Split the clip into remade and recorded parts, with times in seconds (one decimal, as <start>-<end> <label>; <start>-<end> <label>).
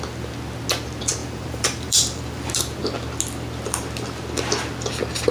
0.0-1.2 recorded; 1.2-2.6 remade; 2.6-5.3 recorded